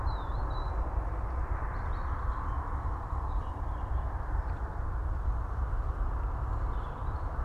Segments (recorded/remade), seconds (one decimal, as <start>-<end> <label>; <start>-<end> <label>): 0.0-2.0 recorded; 2.0-6.4 remade; 6.4-7.4 recorded